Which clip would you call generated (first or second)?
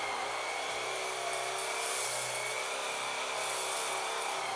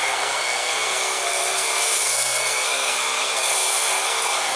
second